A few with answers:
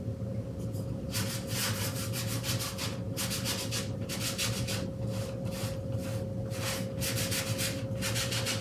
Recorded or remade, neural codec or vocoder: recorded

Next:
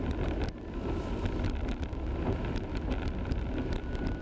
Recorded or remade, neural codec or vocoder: recorded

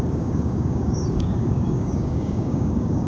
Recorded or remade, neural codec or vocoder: remade, codec, DAC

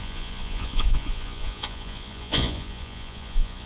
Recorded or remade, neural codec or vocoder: remade, vocoder, Vocos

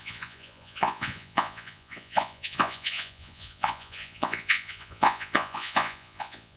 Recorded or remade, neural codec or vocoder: remade, vocoder, Vocos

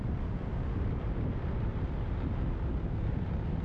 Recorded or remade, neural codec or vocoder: recorded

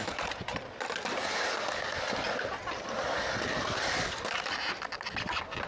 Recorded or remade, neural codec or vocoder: recorded